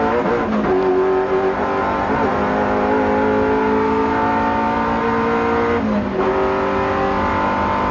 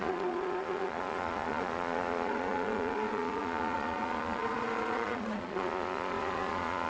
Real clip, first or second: first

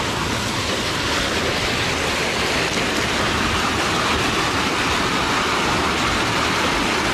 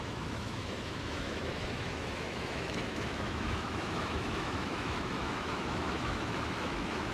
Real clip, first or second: first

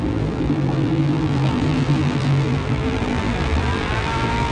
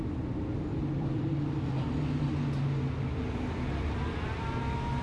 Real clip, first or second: second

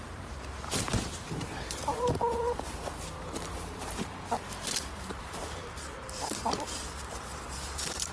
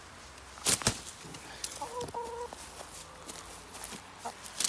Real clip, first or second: second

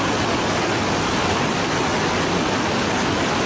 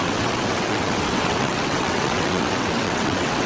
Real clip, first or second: first